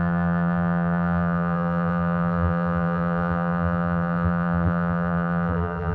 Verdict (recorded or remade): remade